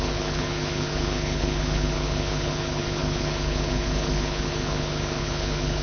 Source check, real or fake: fake